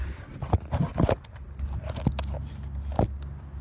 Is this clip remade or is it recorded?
recorded